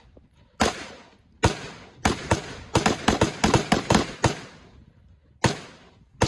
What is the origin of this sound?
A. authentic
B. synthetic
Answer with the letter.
A